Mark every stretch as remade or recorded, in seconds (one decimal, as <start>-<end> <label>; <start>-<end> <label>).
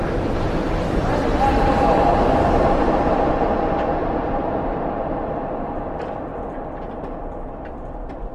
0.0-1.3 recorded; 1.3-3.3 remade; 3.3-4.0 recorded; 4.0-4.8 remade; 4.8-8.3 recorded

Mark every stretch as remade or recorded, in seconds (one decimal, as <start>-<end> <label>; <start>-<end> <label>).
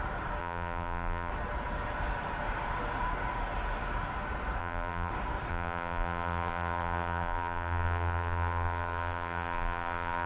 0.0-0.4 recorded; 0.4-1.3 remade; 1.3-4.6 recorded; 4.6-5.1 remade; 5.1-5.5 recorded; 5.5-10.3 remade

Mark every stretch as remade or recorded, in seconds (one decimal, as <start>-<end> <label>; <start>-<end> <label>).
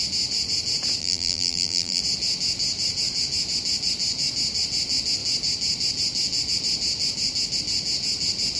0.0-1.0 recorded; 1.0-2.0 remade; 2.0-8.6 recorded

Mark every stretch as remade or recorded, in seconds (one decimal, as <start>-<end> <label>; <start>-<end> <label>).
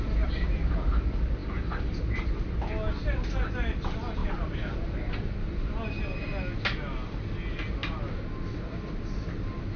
0.0-4.2 recorded; 4.2-5.1 remade; 5.1-9.8 recorded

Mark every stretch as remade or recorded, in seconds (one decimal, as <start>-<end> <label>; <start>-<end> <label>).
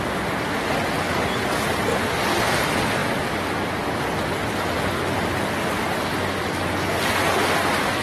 0.0-8.0 recorded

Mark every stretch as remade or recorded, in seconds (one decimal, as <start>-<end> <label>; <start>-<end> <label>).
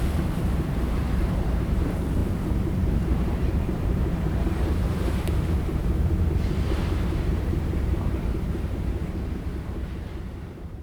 0.0-10.8 remade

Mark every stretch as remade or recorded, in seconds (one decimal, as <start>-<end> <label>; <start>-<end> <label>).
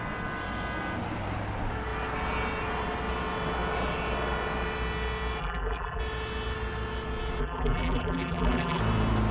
0.0-5.4 recorded; 5.4-6.0 remade; 6.0-7.4 recorded; 7.4-8.8 remade; 8.8-9.3 recorded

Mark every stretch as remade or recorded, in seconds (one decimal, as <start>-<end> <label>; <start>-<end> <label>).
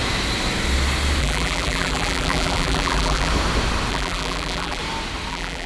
0.0-1.2 recorded; 1.2-3.3 remade; 3.3-3.9 recorded; 3.9-4.8 remade; 4.8-5.3 recorded; 5.3-5.7 remade